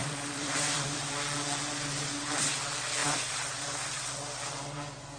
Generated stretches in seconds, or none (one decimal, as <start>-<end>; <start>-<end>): 0.0-1.0; 3.0-4.1